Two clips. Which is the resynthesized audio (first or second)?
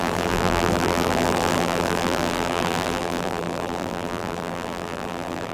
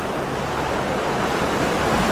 first